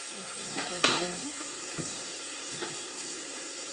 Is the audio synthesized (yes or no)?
yes